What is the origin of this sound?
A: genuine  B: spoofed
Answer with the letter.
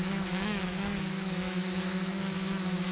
B